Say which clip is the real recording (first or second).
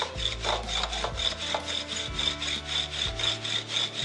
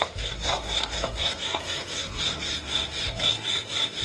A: first